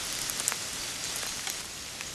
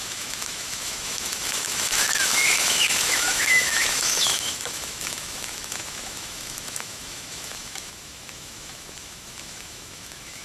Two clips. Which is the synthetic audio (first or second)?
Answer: second